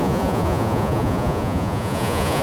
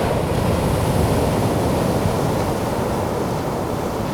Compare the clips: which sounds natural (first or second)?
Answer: second